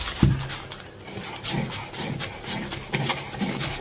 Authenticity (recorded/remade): recorded